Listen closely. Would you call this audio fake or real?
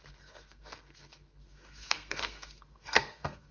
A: fake